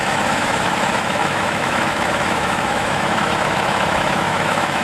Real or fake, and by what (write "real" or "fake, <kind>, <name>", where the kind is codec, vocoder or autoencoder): fake, autoencoder, DAC-VAE